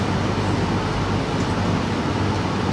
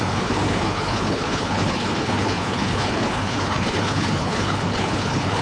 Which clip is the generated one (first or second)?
second